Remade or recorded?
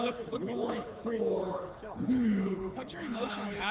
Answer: remade